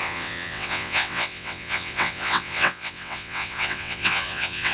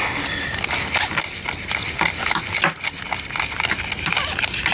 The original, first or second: second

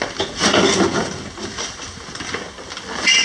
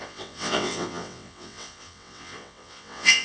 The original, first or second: first